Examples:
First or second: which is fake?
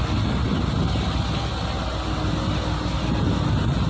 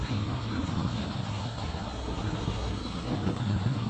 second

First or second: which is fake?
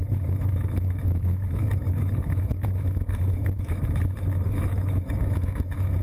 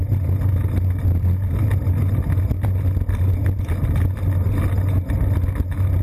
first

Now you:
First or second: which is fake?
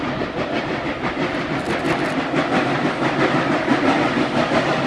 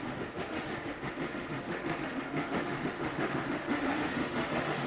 second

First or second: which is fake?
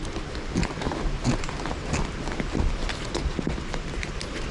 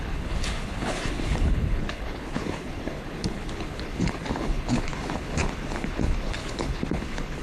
second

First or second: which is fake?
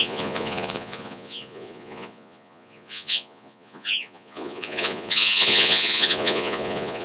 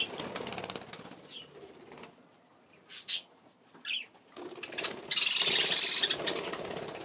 first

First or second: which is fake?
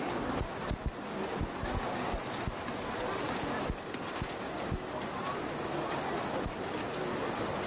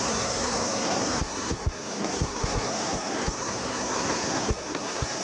second